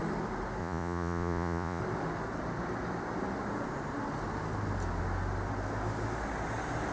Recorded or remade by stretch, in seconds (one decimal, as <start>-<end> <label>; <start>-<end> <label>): 0.0-0.6 recorded; 0.6-1.8 remade; 1.8-6.9 recorded